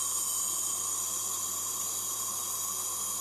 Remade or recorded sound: recorded